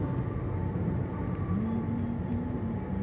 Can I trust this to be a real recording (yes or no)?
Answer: yes